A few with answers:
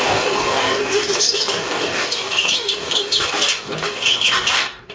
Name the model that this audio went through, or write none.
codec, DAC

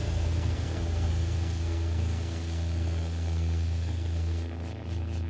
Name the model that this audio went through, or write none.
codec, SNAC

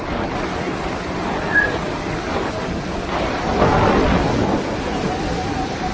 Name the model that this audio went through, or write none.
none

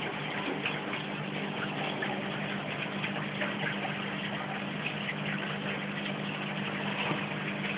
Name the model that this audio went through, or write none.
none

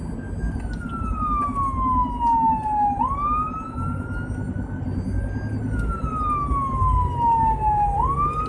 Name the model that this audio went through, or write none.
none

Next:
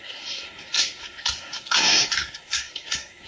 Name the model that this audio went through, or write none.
codec, SNAC